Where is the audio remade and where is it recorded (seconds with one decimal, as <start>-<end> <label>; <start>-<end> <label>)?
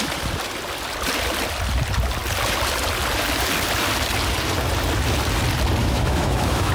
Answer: 0.0-5.8 recorded; 5.8-6.7 remade